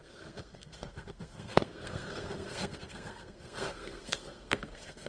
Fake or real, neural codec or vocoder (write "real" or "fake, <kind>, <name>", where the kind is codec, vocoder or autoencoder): fake, codec, SNAC